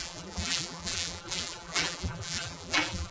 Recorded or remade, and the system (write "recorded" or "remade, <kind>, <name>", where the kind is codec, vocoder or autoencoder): remade, vocoder, BigVGAN v2